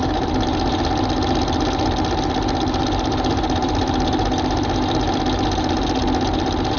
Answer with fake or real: real